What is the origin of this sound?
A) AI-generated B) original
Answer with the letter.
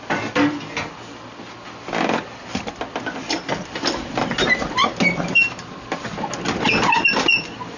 B